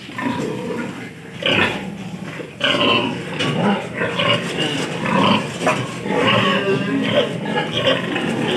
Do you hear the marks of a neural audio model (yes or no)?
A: no